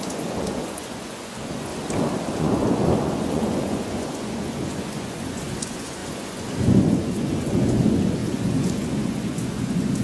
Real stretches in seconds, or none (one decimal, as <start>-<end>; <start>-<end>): 1.7-2.4